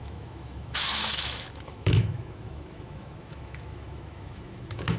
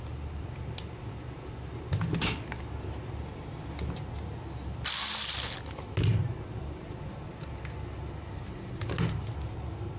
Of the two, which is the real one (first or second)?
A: second